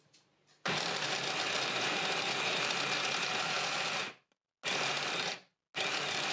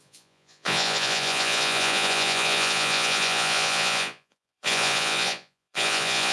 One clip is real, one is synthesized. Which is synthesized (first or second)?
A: second